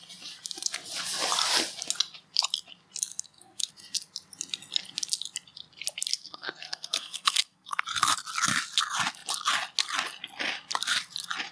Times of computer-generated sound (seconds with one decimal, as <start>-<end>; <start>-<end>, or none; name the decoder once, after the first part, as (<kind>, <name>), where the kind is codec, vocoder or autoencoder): 3.1-3.7 (codec, SNAC); 6.1-7.8